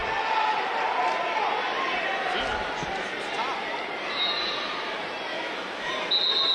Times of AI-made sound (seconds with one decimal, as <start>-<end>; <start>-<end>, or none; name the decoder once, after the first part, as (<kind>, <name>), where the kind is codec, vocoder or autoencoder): 5.3-5.9 (autoencoder, DAC-VAE)